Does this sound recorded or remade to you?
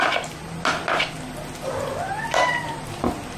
recorded